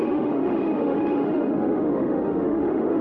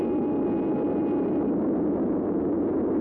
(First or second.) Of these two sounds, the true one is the second